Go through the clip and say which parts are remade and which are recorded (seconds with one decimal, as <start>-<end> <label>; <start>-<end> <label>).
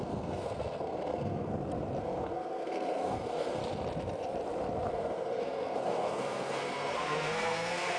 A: 0.0-1.5 remade; 1.5-2.0 recorded; 2.0-3.6 remade; 3.6-4.9 recorded; 4.9-8.0 remade